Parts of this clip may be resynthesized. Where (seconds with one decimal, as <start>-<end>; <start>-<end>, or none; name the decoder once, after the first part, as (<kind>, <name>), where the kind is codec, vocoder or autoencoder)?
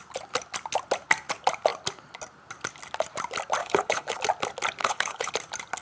3.6-4.2 (codec, HILCodec); 4.8-5.3